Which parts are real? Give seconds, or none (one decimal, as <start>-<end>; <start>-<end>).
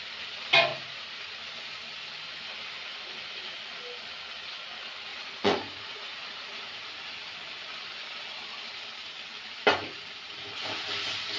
0.0-0.7; 1.4-5.1; 6.9-11.4